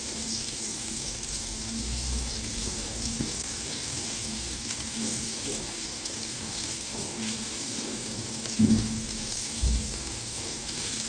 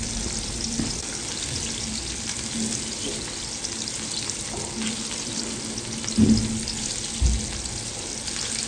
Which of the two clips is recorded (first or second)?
second